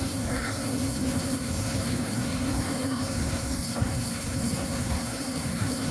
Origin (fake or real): fake